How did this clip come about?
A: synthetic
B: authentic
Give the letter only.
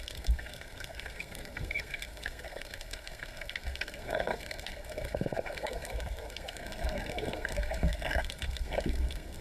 A